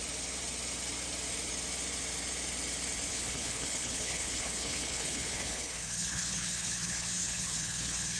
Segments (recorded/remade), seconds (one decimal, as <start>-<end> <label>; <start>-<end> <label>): 0.0-3.1 recorded; 3.1-8.2 remade